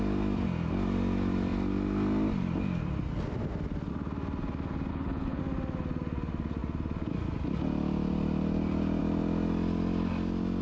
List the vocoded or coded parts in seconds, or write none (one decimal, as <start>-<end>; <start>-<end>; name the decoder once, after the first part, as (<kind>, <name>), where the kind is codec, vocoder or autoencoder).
4.9-5.4 (codec, HILCodec)